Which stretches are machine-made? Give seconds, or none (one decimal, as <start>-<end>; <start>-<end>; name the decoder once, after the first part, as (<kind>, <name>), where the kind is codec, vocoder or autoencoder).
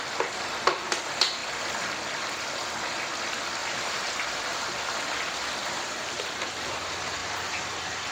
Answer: 3.6-4.1 (vocoder, BigVGAN v2); 5.6-6.7; 7.2-8.1